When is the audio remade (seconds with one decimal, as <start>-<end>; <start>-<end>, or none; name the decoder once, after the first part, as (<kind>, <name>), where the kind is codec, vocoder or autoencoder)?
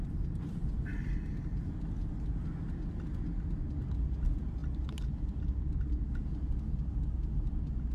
none